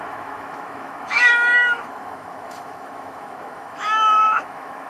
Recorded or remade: remade